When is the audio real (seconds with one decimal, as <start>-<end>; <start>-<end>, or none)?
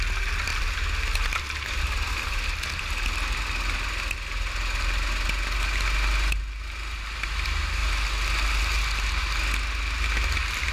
0.0-10.7